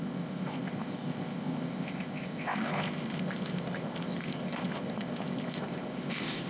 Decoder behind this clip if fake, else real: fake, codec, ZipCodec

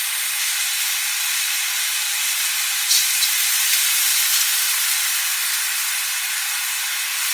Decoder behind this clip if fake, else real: real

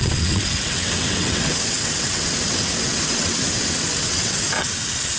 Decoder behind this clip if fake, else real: fake, vocoder, WaveNeXt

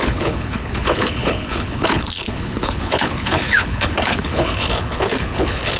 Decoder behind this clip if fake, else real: fake, codec, HILCodec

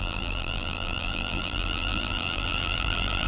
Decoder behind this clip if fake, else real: fake, vocoder, BigVGAN v2